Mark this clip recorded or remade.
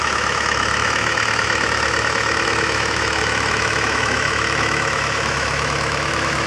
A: remade